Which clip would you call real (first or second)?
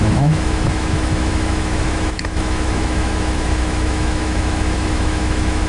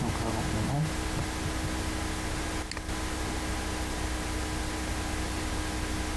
second